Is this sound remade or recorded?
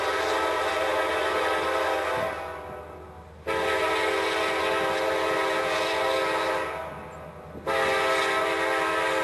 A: recorded